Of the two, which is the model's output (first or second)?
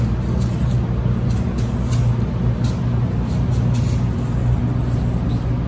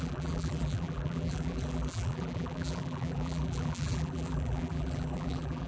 second